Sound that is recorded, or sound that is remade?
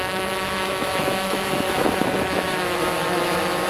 remade